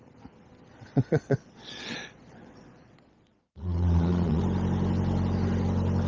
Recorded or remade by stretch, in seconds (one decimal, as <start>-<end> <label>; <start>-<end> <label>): 0.0-0.7 recorded; 0.7-4.4 remade; 4.4-6.1 recorded